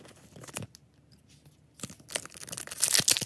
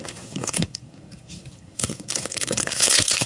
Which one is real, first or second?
first